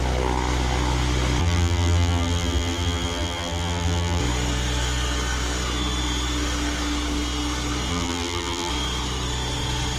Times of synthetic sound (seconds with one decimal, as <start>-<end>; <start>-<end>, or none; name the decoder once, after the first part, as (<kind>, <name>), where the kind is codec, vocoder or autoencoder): 1.4-4.2 (vocoder, BigVGAN v2); 7.9-8.7